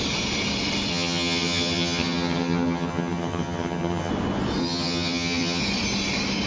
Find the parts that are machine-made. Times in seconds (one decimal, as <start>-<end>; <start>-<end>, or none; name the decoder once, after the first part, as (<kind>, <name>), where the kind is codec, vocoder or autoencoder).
0.9-4.1 (vocoder, HiFi-GAN); 4.6-5.6